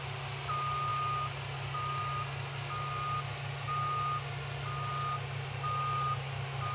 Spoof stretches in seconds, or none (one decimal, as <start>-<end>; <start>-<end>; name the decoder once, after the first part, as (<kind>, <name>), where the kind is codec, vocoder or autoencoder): none